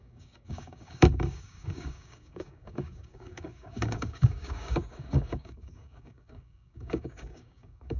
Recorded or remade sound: remade